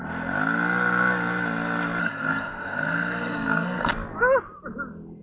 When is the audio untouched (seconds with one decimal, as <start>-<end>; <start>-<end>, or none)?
0.0-2.0; 3.9-5.2